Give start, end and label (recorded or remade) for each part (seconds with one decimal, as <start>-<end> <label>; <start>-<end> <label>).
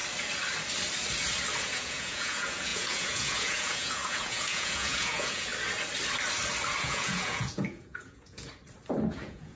0.0-1.6 recorded; 1.6-5.5 remade; 5.5-6.8 recorded; 6.8-8.5 remade; 8.5-9.1 recorded; 9.1-9.6 remade